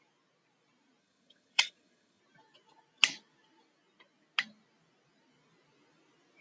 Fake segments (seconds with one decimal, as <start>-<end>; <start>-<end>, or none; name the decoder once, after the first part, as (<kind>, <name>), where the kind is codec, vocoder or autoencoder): 1.0-2.2 (vocoder, HiFi-GAN)